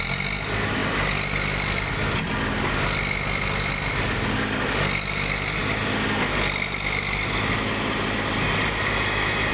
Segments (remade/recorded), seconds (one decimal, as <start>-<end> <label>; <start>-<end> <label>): 0.0-0.8 recorded; 0.8-1.8 remade; 1.8-9.5 recorded

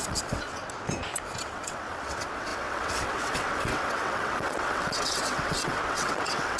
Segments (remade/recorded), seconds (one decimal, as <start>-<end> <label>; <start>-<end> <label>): 0.0-0.6 remade; 0.6-1.4 recorded; 1.4-6.6 remade